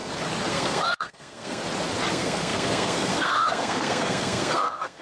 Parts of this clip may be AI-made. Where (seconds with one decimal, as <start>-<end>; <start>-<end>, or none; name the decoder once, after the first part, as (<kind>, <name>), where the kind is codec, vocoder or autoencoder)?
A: 0.5-1.6 (codec, SNAC); 2.1-5.0